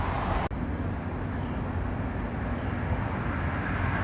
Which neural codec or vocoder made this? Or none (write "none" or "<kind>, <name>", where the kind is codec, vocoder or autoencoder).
none